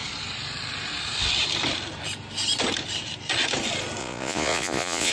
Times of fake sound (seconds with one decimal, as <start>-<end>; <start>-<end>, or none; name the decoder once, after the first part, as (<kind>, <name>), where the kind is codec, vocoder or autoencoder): 4.0-5.1 (vocoder, Vocos)

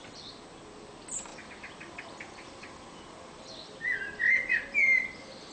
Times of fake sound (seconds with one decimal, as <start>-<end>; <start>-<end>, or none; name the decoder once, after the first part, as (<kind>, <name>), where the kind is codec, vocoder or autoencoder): none

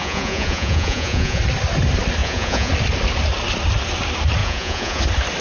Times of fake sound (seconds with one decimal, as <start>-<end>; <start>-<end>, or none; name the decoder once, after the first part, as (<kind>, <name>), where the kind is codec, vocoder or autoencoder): 0.0-1.4 (vocoder, Vocos); 2.2-2.7; 4.4-5.0

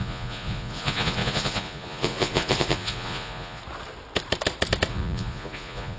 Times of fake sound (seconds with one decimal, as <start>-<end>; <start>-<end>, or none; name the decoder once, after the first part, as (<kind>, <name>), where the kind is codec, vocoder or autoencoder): 0.0-3.6 (vocoder, Vocos); 4.9-6.0

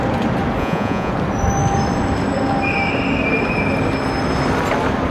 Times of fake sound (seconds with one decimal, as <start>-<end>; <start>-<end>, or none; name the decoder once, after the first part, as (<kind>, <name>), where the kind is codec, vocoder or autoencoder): 0.6-1.1 (vocoder, Vocos)

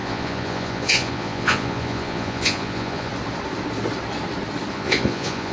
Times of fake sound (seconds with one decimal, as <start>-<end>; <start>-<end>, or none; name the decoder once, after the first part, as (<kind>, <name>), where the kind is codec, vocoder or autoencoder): 0.0-3.1 (vocoder, Vocos); 4.7-5.5